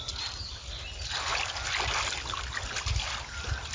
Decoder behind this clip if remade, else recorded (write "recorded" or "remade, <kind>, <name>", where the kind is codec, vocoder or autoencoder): recorded